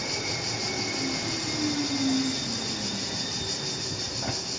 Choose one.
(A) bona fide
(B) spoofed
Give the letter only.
A